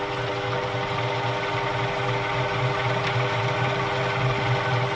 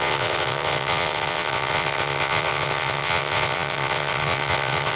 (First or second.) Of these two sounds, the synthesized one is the second